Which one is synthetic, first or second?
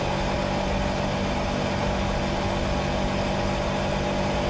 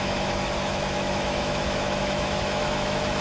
second